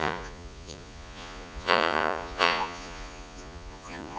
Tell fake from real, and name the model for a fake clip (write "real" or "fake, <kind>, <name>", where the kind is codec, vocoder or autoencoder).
fake, vocoder, Vocos